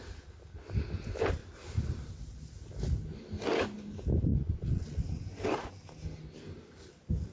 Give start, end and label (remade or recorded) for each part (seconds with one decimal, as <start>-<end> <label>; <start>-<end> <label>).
0.0-4.3 recorded; 4.3-5.0 remade; 5.0-7.3 recorded